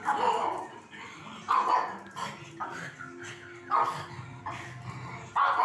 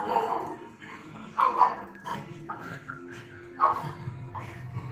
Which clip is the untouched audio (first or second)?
first